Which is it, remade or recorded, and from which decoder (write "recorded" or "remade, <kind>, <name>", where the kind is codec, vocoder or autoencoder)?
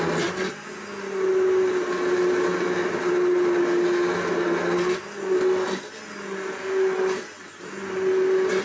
recorded